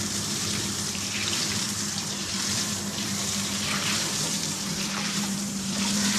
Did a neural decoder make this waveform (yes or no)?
yes